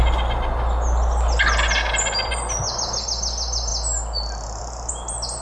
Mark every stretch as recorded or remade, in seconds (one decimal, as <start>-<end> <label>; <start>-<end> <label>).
0.0-5.4 recorded